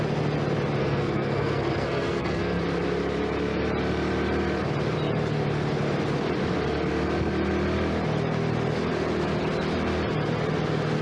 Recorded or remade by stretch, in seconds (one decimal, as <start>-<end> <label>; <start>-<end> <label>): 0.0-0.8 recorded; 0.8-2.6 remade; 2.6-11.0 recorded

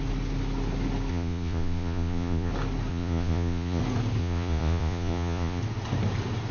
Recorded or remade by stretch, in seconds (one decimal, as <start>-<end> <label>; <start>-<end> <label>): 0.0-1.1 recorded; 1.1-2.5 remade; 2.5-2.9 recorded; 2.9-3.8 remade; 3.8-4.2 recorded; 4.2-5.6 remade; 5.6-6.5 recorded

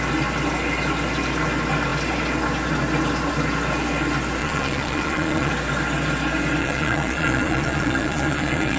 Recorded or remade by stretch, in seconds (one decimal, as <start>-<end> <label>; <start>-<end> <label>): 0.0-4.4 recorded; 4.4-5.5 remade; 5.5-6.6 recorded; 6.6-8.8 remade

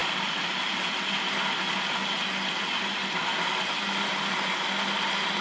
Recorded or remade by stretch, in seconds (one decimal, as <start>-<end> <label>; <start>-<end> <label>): 0.0-5.4 recorded